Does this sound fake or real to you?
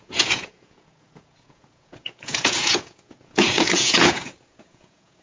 fake